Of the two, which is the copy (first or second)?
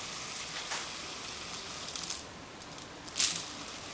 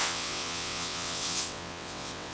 second